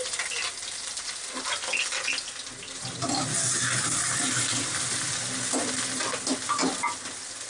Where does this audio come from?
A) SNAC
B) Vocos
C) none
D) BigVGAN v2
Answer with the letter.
C